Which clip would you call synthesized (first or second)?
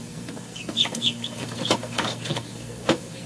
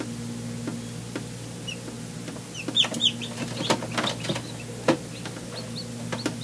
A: first